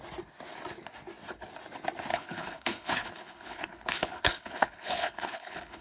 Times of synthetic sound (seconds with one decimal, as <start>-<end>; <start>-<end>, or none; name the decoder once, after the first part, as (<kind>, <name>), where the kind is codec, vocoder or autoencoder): 2.1-5.8 (codec, HILCodec)